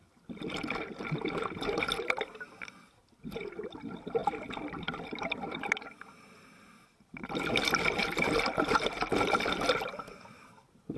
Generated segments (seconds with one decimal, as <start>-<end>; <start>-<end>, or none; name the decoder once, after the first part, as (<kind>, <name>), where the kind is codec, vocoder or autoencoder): none